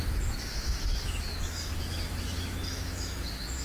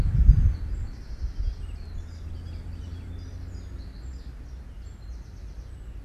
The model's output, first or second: first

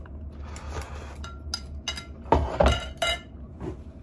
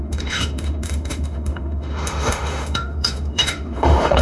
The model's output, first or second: second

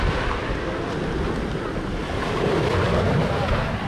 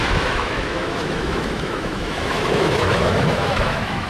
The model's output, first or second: second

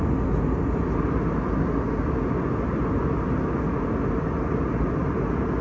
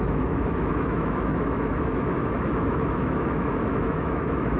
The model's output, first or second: second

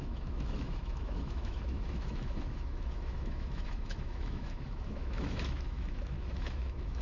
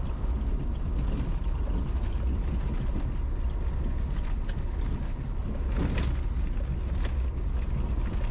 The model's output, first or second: first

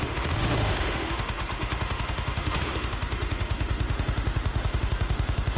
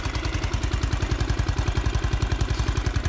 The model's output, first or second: first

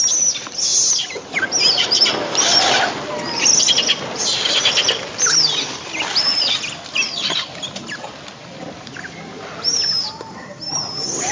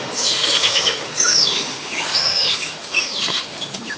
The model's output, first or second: second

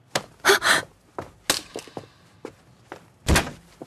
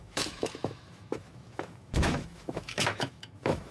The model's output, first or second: second